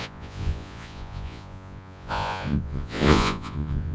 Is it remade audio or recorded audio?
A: remade